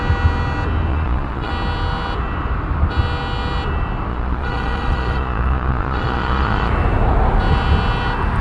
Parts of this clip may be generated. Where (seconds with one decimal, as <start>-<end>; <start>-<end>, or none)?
0.9-1.5; 4.1-6.7